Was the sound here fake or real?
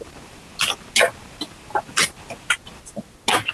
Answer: real